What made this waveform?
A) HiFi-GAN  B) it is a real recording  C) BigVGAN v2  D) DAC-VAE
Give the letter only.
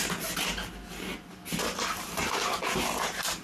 B